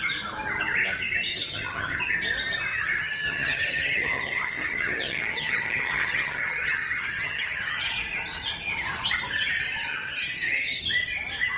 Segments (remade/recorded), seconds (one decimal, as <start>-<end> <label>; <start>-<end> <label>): 0.0-1.3 recorded; 1.3-2.0 remade; 2.0-2.7 recorded; 2.7-7.8 remade; 7.8-9.8 recorded; 9.8-10.8 remade; 10.8-11.6 recorded